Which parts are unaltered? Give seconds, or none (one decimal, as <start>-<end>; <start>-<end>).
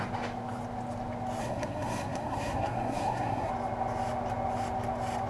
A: 0.0-1.4; 3.5-5.3